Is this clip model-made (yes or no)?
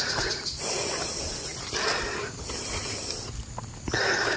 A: no